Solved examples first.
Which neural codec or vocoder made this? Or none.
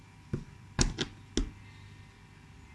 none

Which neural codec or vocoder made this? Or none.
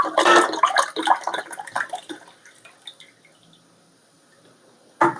none